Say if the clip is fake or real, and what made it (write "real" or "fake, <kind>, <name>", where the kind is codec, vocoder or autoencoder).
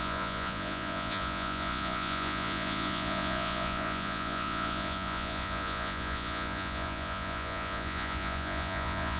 fake, vocoder, Vocos